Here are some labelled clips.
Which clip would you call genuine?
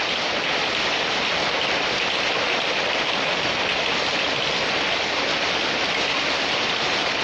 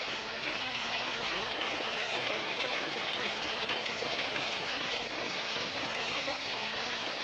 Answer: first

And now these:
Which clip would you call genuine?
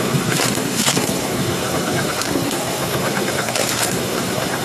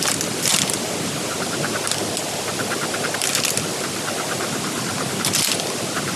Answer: second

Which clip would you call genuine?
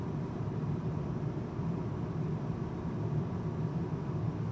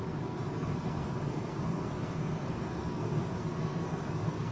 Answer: first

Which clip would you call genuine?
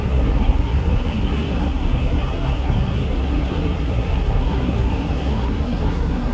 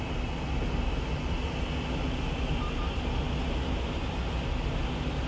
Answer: second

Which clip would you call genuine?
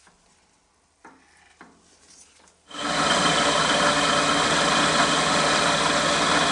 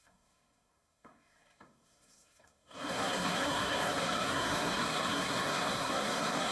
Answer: first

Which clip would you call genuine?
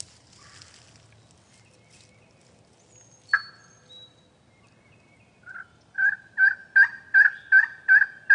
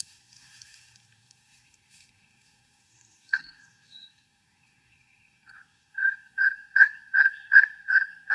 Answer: first